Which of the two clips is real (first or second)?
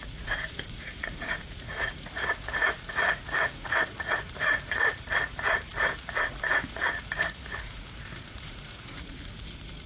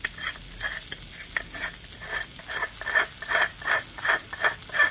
second